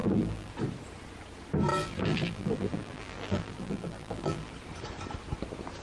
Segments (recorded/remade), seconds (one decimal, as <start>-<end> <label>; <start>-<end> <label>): 0.0-0.5 remade; 0.5-1.7 recorded; 1.7-4.5 remade; 4.5-5.8 recorded